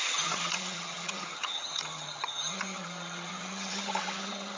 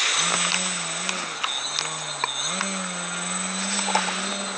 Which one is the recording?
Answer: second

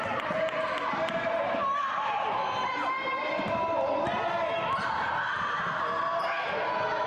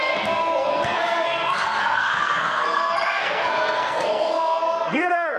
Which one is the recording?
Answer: first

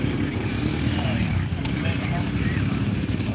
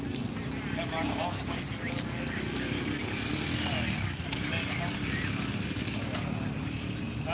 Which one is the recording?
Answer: second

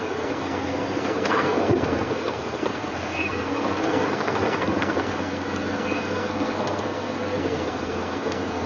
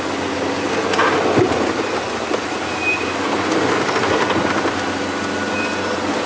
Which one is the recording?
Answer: second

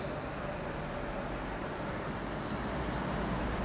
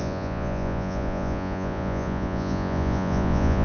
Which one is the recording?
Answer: first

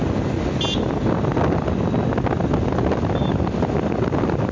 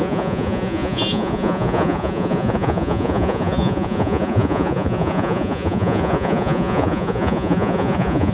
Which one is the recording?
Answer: first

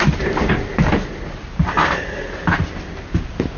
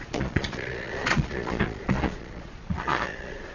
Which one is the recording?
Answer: first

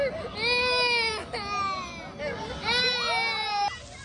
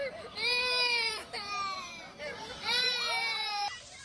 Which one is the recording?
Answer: first